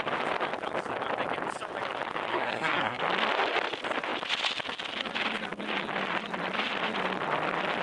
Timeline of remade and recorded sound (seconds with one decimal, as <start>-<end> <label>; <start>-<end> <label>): 0.0-2.3 recorded; 2.3-3.0 remade; 3.0-7.8 recorded